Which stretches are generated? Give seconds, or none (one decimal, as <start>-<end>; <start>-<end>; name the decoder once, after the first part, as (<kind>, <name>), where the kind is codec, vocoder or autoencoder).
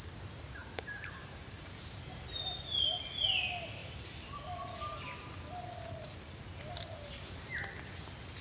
0.6-2.4 (vocoder, BigVGAN v2); 3.8-4.5